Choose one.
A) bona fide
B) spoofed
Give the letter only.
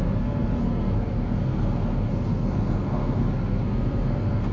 B